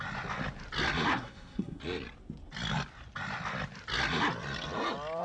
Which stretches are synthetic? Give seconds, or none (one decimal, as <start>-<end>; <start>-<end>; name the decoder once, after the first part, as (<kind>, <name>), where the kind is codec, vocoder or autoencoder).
1.1-1.8 (codec, SNAC)